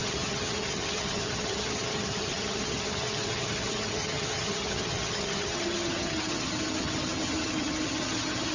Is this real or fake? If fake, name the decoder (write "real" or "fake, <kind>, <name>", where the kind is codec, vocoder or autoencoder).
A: fake, vocoder, HiFi-GAN